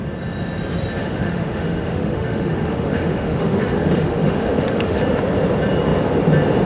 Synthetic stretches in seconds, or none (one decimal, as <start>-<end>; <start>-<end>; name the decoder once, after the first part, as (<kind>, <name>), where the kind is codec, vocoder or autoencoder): 1.0-5.0 (autoencoder, DAC-VAE)